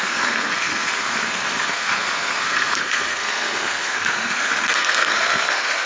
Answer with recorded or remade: remade